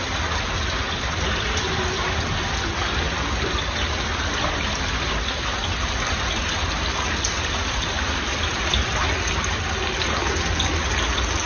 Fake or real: real